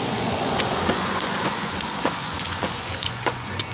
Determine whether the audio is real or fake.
fake